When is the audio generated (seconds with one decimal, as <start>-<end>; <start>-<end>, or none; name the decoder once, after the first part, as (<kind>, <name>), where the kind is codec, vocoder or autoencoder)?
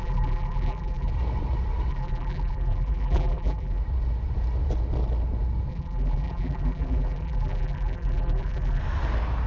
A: 0.0-1.1 (vocoder, BigVGAN v2); 1.9-3.8; 5.7-8.8